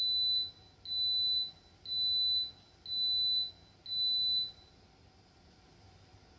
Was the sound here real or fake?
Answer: real